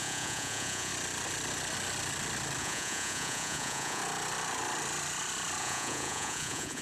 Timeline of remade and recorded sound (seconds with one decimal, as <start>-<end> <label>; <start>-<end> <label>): 0.0-0.9 remade; 0.9-2.6 recorded; 2.6-4.0 remade; 4.0-5.6 recorded; 5.6-6.8 remade